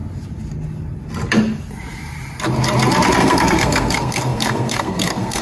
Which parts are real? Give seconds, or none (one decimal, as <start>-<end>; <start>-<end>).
0.0-3.2